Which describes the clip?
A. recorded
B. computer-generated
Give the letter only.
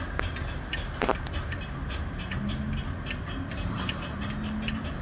A